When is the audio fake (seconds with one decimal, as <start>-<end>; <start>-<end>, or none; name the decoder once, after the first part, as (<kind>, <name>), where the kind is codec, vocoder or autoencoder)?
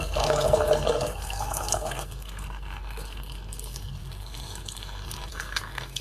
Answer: 0.0-6.0 (codec, SNAC)